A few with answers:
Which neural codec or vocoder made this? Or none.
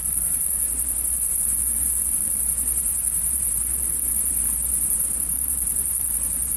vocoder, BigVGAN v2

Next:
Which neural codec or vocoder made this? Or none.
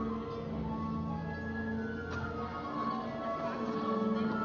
none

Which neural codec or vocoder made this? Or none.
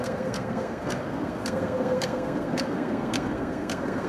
codec, SNAC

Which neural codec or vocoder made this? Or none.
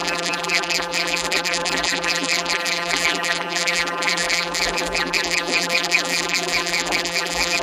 vocoder, BigVGAN v2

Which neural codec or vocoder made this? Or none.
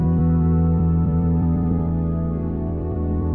vocoder, BigVGAN v2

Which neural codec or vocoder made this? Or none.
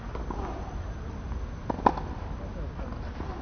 none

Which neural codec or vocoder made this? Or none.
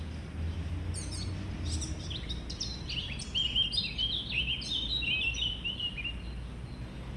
none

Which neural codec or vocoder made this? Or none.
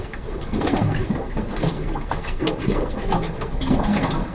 codec, SNAC